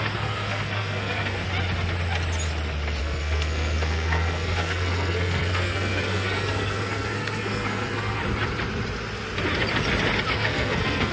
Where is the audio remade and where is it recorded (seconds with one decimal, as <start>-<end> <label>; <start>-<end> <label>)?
0.0-1.4 remade; 1.4-3.0 recorded; 3.0-8.2 remade; 8.2-10.3 recorded; 10.3-11.1 remade